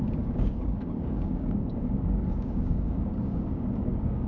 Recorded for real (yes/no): no